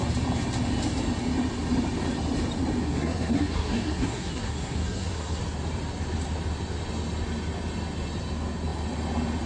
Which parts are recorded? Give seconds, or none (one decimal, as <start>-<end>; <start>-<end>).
0.0-2.8; 5.4-9.5